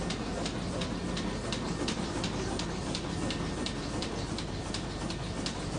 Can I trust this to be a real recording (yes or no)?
yes